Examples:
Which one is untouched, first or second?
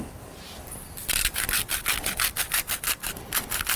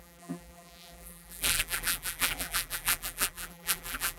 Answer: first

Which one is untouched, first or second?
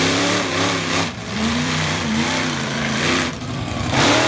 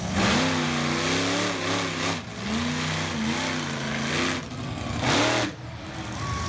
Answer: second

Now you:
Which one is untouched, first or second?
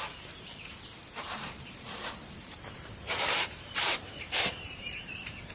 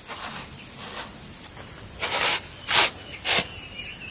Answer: second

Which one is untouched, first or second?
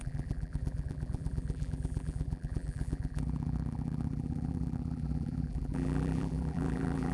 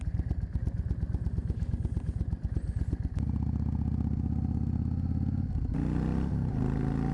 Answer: second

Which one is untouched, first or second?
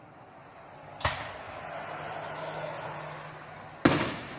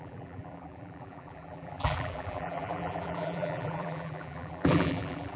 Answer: first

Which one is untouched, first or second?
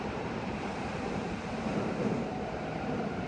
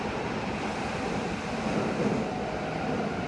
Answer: second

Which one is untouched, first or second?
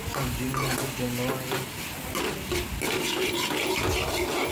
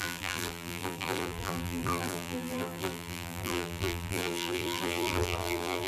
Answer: first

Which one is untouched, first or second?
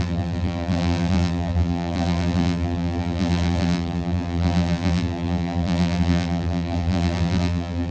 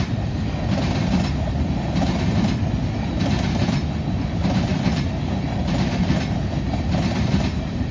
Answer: second